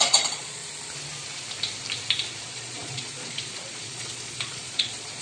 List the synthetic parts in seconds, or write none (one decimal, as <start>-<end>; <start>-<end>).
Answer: 0.0-0.6; 2.4-5.2